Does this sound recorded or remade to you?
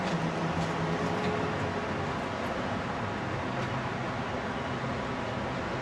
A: recorded